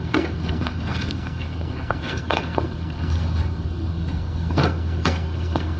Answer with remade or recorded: remade